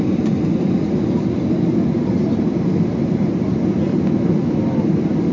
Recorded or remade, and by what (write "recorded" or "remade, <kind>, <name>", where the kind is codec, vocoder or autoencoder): recorded